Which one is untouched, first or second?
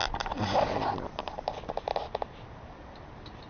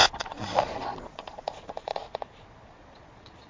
first